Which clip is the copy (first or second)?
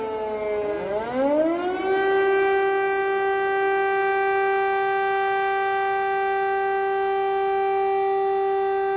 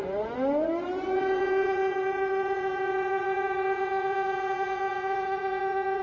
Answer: second